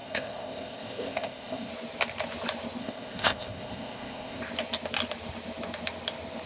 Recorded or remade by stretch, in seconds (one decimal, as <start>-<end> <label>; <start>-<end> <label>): 0.0-1.7 remade; 1.7-2.8 recorded; 2.8-4.4 remade; 4.4-6.5 recorded